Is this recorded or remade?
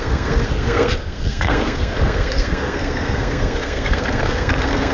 remade